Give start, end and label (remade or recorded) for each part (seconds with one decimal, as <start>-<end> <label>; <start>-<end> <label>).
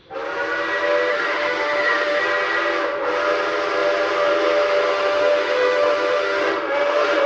0.0-1.1 recorded; 1.1-2.2 remade; 2.2-4.9 recorded; 4.9-7.3 remade